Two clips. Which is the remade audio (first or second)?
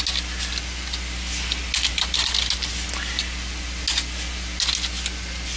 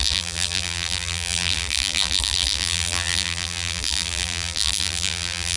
second